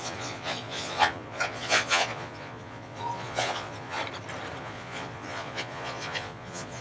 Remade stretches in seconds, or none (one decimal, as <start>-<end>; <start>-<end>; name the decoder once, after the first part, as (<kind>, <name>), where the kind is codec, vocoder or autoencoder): 0.0-4.0 (vocoder, Vocos); 4.6-6.8